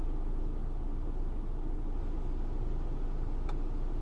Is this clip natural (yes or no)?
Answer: yes